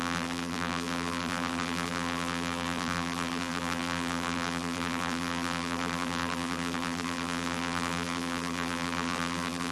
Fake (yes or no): yes